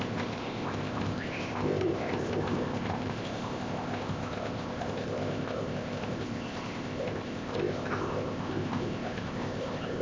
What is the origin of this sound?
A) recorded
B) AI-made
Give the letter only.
B